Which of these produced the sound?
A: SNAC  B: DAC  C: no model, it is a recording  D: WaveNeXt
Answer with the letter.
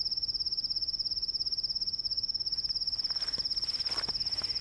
C